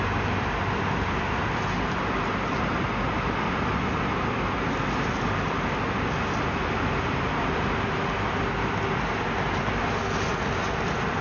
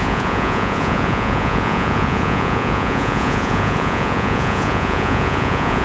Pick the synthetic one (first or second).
second